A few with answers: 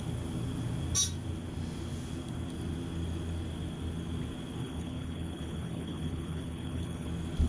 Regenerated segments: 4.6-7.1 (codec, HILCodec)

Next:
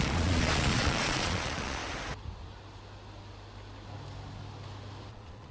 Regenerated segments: 0.0-1.8 (vocoder, Vocos); 5.1-5.5